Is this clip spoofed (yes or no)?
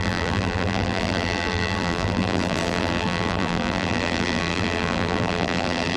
yes